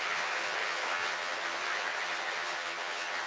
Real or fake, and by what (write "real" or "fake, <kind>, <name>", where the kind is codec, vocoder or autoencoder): fake, vocoder, HiFi-GAN